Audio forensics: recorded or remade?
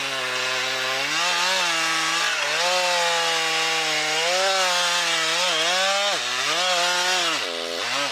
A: recorded